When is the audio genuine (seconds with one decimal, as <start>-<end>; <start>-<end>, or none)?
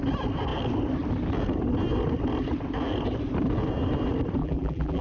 0.0-4.4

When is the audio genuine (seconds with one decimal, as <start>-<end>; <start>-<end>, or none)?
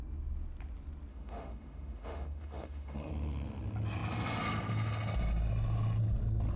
0.0-1.1; 3.1-6.6